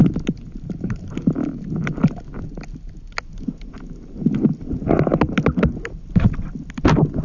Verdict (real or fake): real